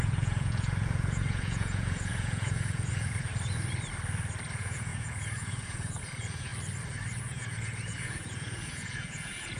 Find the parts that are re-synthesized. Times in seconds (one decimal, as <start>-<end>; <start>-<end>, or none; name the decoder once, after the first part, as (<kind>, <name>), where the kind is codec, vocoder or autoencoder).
0.0-3.3 (vocoder, Vocos); 4.5-6.5; 7.2-9.6